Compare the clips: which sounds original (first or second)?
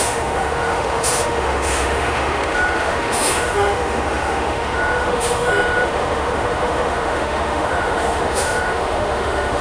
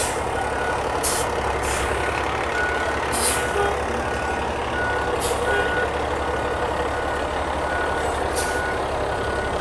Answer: second